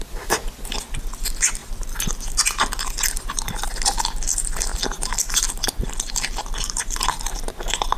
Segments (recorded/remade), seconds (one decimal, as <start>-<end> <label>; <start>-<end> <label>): 0.0-4.7 recorded; 4.7-7.4 remade; 7.4-8.0 recorded